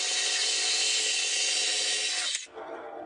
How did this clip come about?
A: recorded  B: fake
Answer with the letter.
A